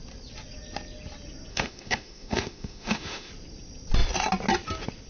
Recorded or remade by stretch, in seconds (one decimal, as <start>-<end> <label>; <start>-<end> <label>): 0.0-1.5 recorded; 1.5-3.3 remade; 3.3-5.1 recorded